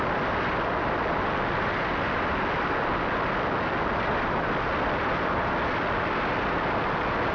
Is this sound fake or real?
real